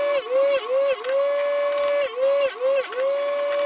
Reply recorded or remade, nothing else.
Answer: recorded